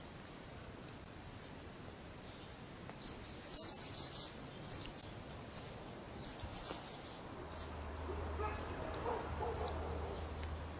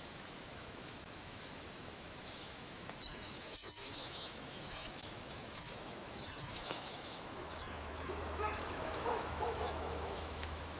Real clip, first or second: first